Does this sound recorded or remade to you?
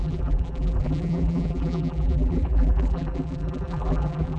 remade